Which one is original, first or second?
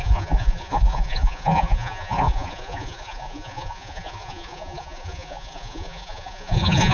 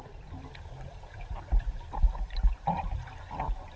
second